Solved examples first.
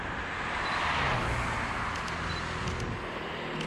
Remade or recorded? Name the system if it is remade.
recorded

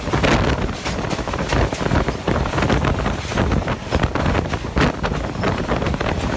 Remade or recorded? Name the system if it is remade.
recorded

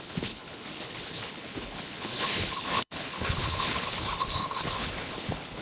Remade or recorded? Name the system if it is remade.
remade, codec, HILCodec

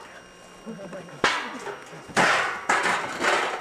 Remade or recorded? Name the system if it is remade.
recorded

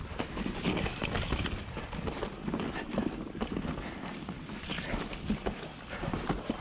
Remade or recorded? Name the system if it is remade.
recorded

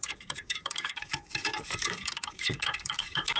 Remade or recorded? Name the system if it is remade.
remade, codec, DAC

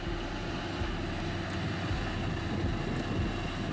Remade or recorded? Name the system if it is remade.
recorded